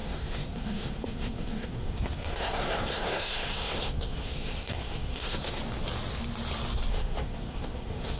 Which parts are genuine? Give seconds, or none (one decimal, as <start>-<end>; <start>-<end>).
5.6-6.9